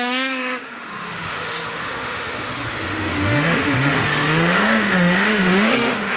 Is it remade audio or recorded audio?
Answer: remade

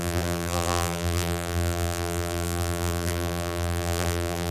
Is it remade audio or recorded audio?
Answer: remade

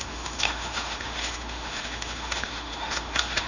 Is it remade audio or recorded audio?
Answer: remade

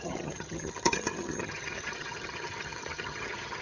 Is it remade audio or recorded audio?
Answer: remade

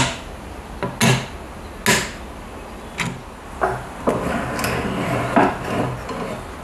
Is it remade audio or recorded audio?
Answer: recorded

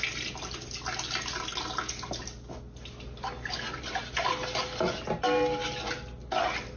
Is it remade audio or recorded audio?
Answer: recorded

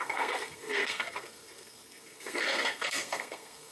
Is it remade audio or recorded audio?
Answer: remade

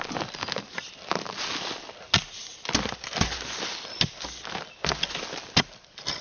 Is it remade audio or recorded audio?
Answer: recorded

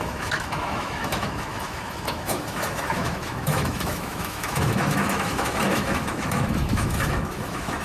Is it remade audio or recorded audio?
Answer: remade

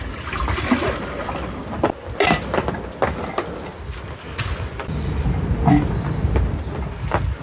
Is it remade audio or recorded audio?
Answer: recorded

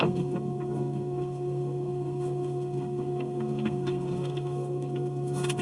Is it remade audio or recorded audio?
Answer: remade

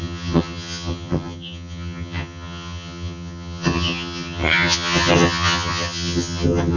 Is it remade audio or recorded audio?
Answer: remade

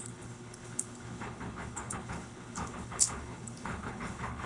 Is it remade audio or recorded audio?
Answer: remade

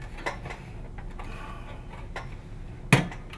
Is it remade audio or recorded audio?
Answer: recorded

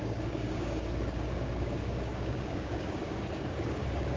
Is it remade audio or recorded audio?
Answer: remade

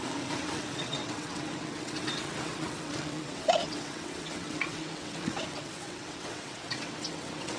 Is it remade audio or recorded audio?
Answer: remade